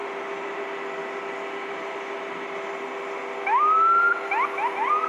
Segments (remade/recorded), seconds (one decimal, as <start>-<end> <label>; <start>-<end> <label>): 0.0-5.1 recorded